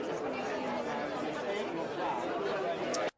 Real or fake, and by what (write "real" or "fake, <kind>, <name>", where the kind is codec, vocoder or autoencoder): real